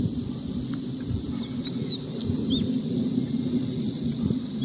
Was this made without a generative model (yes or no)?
yes